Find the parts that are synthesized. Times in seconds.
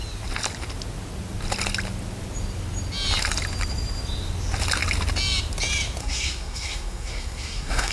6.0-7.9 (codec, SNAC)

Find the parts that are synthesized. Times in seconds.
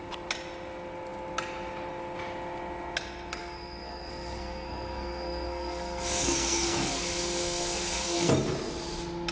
3.4-8.3 (codec, SNAC)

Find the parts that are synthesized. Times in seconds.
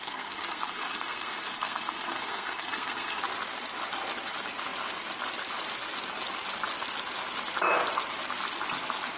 0.0-3.2 (codec, SNAC)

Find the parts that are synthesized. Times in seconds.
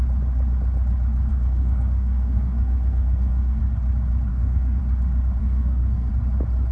1.3-3.6 (codec, SNAC); 4.3-4.8; 5.4-6.1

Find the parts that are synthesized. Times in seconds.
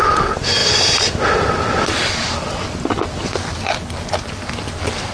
none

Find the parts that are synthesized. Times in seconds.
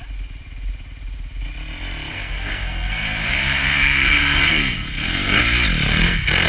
2.1-5.4 (codec, SNAC); 5.9-6.5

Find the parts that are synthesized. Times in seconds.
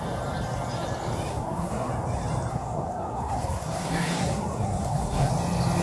1.3-1.9 (codec, SNAC); 2.5-5.3